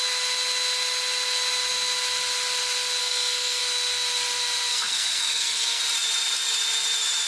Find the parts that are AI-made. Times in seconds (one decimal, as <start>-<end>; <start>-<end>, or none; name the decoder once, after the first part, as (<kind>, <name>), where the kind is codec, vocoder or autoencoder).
3.0-3.6 (codec, SNAC); 4.7-5.8